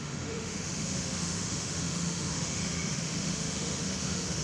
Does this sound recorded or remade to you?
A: remade